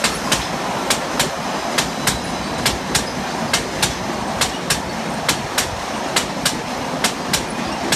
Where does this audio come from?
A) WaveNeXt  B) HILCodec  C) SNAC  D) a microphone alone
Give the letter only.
D